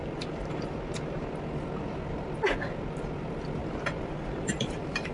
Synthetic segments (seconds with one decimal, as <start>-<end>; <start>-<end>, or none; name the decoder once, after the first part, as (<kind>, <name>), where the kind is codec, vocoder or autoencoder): 0.0-1.3 (vocoder, BigVGAN v2); 3.6-5.1